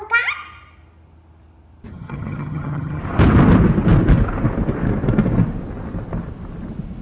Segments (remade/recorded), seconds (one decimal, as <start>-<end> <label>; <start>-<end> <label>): 0.0-1.9 recorded; 1.9-3.0 remade; 3.0-7.0 recorded